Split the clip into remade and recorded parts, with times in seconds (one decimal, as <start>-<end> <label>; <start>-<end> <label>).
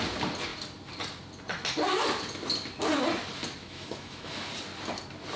0.0-3.6 recorded; 3.6-4.5 remade; 4.5-5.4 recorded